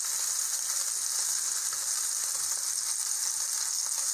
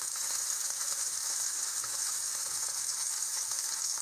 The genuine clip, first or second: first